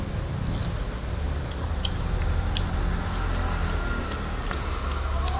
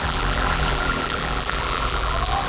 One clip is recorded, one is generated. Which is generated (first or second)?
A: second